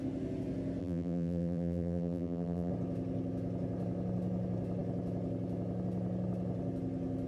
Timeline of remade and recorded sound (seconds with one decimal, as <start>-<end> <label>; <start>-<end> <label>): 0.0-0.8 recorded; 0.8-2.7 remade; 2.7-7.3 recorded